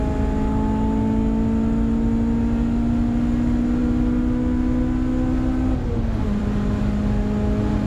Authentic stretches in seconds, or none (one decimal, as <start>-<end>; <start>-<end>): 0.0-7.9